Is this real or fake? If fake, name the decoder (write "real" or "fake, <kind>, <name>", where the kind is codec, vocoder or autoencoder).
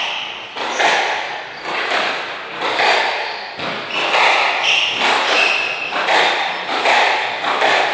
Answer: real